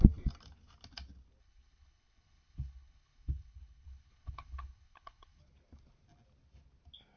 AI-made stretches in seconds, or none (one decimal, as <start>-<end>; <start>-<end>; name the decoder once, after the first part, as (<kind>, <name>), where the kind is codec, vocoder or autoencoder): 1.4-5.4 (codec, HILCodec)